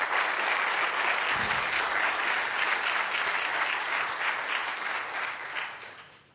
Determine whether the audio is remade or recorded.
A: recorded